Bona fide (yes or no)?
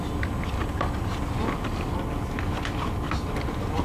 yes